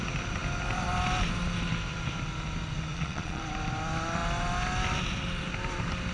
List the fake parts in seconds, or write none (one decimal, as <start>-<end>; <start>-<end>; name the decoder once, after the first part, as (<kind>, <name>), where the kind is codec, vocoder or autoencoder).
2.9-3.4 (vocoder, Vocos)

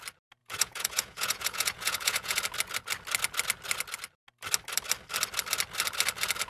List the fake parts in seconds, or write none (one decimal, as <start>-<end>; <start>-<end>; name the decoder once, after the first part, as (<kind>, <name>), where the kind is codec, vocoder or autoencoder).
0.4-2.4 (vocoder, Vocos)

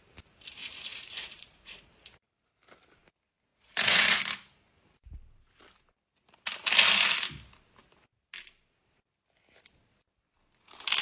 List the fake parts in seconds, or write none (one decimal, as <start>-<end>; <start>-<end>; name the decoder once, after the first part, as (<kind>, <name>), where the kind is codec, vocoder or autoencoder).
0.6-2.3 (vocoder, Vocos); 3.5-4.2

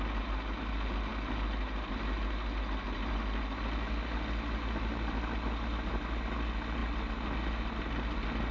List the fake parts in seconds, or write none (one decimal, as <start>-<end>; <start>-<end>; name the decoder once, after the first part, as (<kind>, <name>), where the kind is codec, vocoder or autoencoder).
none